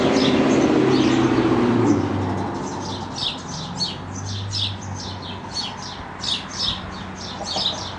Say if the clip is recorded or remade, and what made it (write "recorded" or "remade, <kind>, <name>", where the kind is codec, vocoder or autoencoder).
recorded